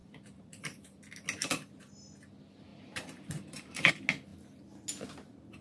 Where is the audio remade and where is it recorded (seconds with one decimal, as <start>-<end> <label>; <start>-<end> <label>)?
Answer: 0.0-1.0 remade; 1.0-2.7 recorded; 2.7-3.9 remade; 3.9-5.6 recorded